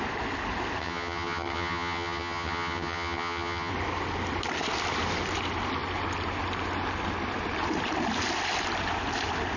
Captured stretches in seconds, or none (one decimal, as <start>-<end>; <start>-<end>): 0.0-0.8; 3.7-9.6